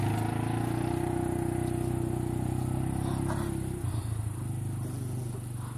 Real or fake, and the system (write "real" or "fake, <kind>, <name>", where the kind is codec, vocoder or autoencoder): real